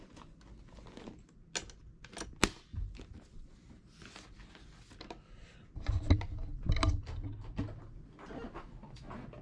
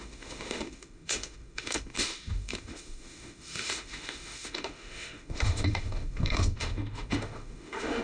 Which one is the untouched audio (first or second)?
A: first